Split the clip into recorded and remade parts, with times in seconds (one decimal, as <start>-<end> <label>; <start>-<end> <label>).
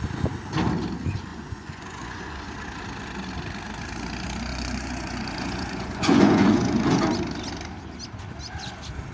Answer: 0.0-1.3 recorded; 1.3-2.5 remade; 2.5-4.5 recorded; 4.5-7.0 remade; 7.0-9.1 recorded